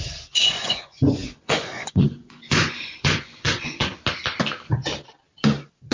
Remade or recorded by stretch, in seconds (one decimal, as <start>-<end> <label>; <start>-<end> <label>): 0.0-0.4 recorded; 0.4-3.9 remade; 3.9-5.9 recorded